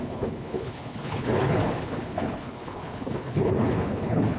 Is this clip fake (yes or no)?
yes